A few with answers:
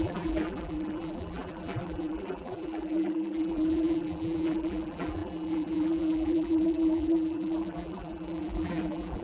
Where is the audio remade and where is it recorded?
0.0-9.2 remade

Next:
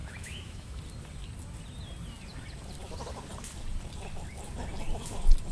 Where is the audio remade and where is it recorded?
0.0-0.8 remade; 0.8-5.5 recorded

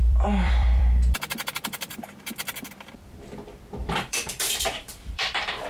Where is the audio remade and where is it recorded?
0.0-1.8 remade; 1.8-3.8 recorded; 3.8-5.7 remade

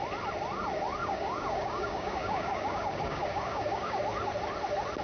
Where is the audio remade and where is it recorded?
0.0-1.0 recorded; 1.0-4.0 remade; 4.0-5.0 recorded

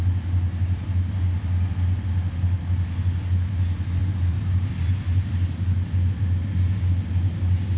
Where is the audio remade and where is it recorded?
0.0-4.0 recorded; 4.0-5.3 remade; 5.3-7.8 recorded

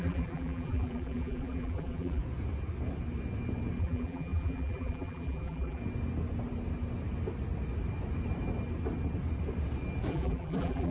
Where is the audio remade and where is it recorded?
0.0-2.2 remade; 2.2-3.8 recorded; 3.8-5.8 remade; 5.8-10.1 recorded; 10.1-10.9 remade

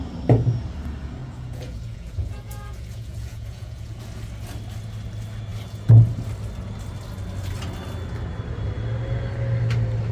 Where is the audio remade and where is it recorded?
0.0-1.2 recorded; 1.2-4.0 remade; 4.0-10.1 recorded

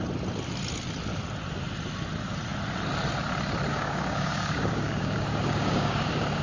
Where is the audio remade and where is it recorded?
0.0-3.7 recorded; 3.7-6.4 remade